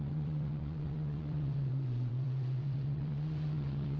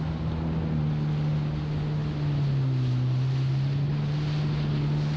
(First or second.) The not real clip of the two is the first